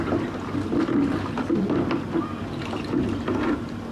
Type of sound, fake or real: real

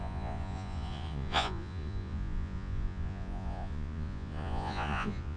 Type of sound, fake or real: fake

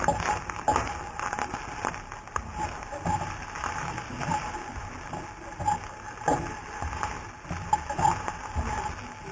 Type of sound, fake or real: real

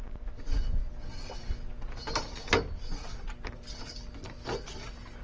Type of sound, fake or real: real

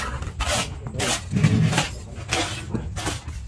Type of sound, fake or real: real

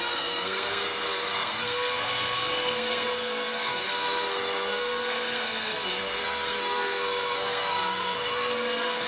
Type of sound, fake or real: fake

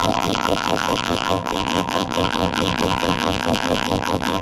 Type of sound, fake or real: fake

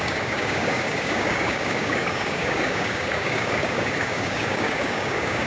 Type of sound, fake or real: fake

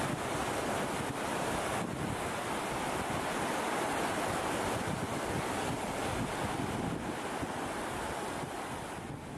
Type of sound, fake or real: real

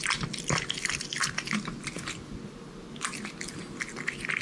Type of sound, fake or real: real